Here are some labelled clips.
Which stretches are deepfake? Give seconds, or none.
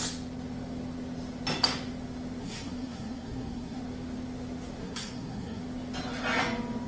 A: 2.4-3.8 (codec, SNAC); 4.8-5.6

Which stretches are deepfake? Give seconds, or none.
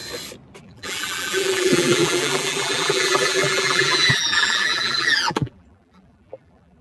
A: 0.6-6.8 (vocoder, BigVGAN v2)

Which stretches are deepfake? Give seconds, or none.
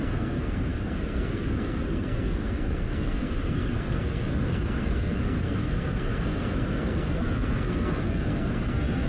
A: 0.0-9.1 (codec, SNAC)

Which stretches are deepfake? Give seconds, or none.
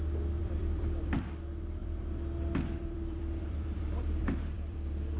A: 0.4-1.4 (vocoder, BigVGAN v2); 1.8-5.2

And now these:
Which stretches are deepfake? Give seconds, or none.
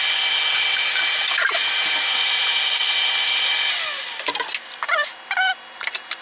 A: 1.6-3.5 (vocoder, BigVGAN v2)